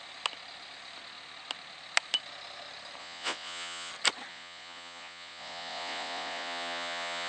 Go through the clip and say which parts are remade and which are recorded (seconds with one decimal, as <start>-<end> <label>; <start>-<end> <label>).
0.0-3.0 recorded; 3.0-3.9 remade; 3.9-4.3 recorded; 4.3-7.3 remade